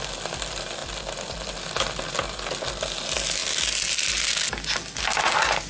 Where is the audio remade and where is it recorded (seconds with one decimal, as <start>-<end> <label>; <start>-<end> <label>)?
0.0-5.7 recorded